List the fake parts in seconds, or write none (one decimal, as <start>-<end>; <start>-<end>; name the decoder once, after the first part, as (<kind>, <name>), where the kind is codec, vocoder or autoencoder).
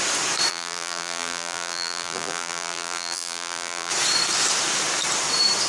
0.5-3.9 (vocoder, BigVGAN v2)